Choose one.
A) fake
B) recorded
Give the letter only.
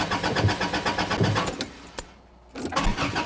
B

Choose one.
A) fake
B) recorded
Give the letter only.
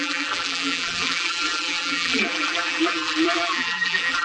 A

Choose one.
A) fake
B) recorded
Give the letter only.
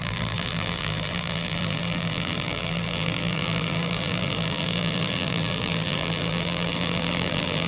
A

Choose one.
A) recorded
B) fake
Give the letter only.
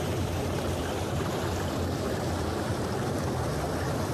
A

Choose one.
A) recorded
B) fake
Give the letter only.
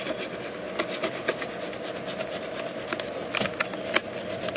A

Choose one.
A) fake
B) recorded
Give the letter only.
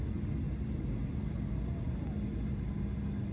B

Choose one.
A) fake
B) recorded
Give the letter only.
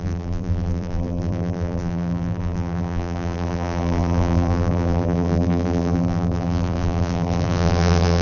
A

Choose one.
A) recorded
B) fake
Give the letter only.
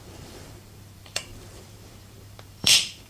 B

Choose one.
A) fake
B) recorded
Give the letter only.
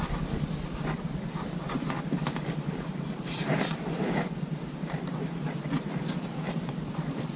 A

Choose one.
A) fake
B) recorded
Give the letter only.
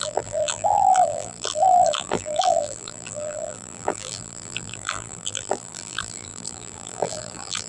A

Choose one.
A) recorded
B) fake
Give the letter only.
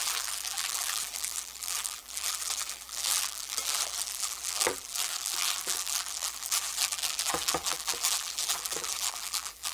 B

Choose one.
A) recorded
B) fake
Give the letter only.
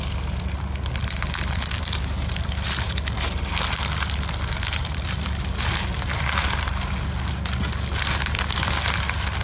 B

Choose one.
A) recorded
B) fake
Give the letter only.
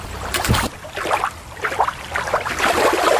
B